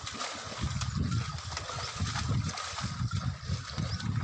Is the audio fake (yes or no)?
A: no